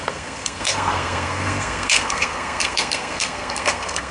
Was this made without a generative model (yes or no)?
no